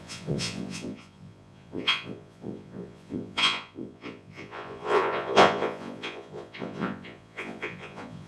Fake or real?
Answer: fake